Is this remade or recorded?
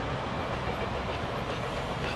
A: recorded